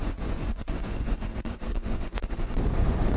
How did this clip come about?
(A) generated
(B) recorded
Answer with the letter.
A